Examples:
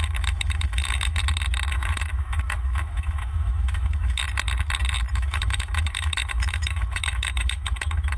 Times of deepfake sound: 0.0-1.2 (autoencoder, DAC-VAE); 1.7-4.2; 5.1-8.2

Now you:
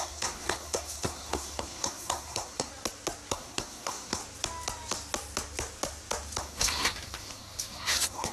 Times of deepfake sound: 0.0-2.7 (codec, SNAC); 3.3-4.2; 6.4-8.3

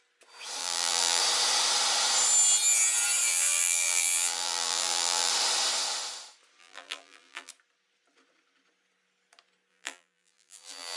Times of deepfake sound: 0.6-1.2 (vocoder, BigVGAN v2); 3.3-5.3; 6.6-7.5; 9.7-11.0

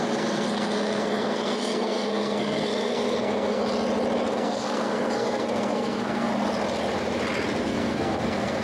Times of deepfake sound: 0.0-3.6 (codec, SNAC); 4.3-6.3; 7.6-8.6

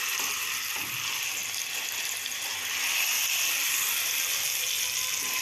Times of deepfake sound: none